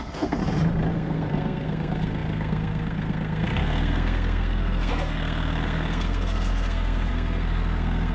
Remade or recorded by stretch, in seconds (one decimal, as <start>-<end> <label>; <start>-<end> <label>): 0.0-0.4 remade; 0.4-0.9 recorded; 0.9-8.1 remade